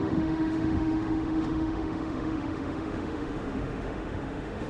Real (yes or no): no